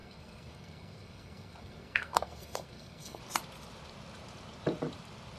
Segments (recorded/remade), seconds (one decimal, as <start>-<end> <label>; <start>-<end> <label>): 0.0-3.2 remade; 3.2-5.4 recorded